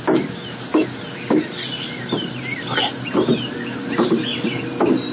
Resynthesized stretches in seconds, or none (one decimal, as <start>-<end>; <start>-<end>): none